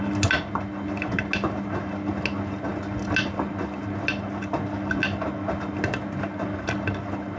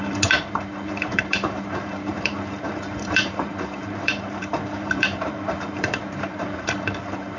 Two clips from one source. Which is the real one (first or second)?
first